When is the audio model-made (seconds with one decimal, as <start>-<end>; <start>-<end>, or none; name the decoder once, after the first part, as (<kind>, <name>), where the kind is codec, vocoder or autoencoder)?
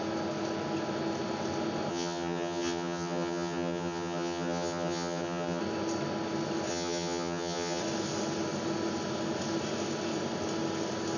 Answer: 1.9-5.6 (vocoder, HiFi-GAN); 6.7-7.8